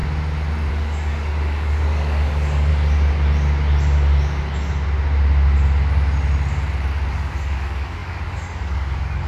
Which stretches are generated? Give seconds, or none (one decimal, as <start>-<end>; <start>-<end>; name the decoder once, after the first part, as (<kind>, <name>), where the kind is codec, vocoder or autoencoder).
0.7-2.7 (codec, DAC); 7.1-9.3